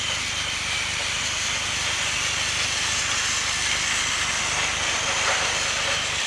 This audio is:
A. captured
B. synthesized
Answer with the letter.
A